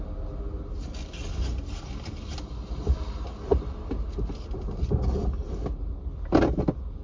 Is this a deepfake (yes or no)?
no